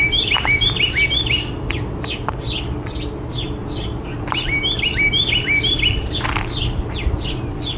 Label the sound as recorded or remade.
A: recorded